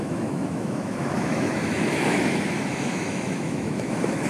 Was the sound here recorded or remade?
remade